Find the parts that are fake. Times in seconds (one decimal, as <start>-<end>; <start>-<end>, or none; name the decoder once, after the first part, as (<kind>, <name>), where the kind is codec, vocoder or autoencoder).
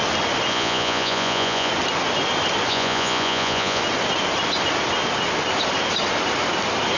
0.5-1.7 (vocoder, Vocos); 2.7-3.8